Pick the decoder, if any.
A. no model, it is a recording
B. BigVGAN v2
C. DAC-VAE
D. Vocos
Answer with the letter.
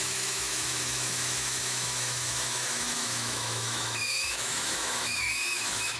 C